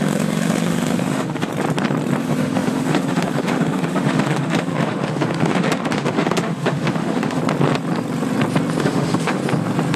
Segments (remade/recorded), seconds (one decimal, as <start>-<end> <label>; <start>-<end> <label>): 0.0-1.5 remade; 1.5-2.2 recorded; 2.2-7.4 remade; 7.4-8.8 recorded; 8.8-9.4 remade; 9.4-10.0 recorded